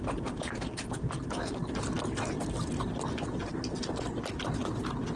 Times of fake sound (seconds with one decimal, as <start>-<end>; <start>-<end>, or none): none